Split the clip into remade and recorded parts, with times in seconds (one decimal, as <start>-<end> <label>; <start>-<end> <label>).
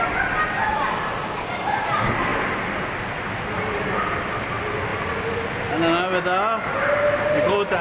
0.0-7.8 recorded